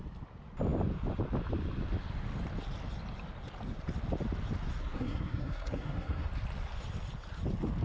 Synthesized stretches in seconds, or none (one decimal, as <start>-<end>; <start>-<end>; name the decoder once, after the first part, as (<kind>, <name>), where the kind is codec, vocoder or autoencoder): 4.8-6.3 (codec, SNAC)